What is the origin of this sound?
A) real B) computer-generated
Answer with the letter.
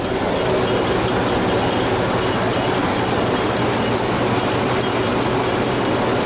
A